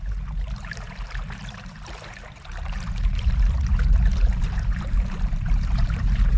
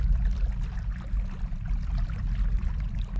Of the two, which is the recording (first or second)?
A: second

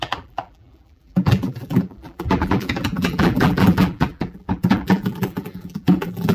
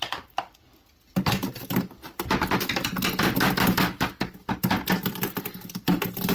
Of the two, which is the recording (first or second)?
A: second